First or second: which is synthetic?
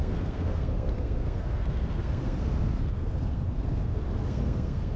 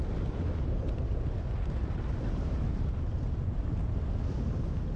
first